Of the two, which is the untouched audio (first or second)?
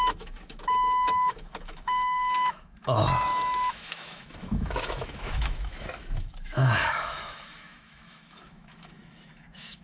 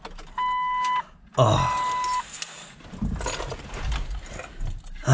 second